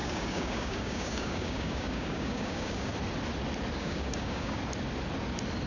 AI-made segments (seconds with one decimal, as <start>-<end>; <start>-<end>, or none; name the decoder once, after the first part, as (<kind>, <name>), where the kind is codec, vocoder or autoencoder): 0.0-2.9 (codec, DAC); 3.8-4.6